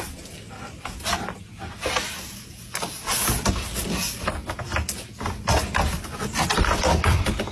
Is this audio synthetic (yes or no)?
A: no